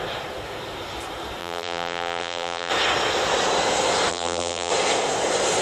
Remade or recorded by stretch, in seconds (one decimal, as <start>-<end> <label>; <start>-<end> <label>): 0.0-1.4 recorded; 1.4-2.7 remade; 2.7-4.1 recorded; 4.1-4.7 remade; 4.7-5.6 recorded